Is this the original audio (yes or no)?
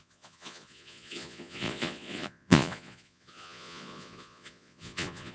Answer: no